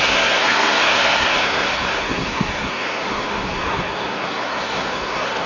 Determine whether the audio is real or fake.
fake